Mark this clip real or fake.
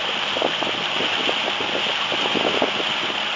real